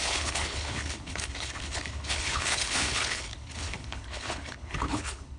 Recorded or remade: remade